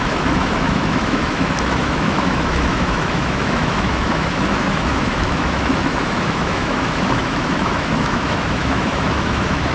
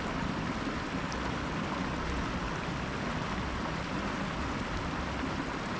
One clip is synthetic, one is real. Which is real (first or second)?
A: second